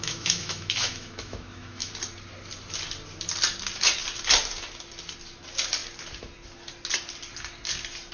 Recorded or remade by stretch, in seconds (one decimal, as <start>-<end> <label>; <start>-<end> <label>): 0.0-1.9 remade; 1.9-8.1 recorded